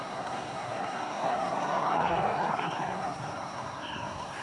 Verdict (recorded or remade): remade